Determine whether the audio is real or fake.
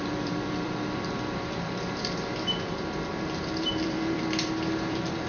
fake